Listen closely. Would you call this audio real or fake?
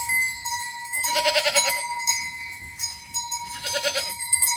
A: fake